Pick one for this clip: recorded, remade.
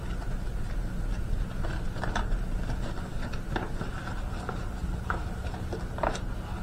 recorded